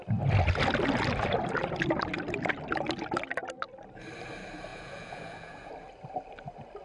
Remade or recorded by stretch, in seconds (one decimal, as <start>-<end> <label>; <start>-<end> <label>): 0.0-4.7 recorded; 4.7-5.7 remade; 5.7-6.8 recorded